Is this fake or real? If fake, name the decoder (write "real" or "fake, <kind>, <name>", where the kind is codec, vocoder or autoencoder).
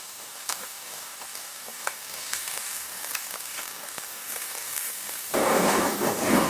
fake, codec, DAC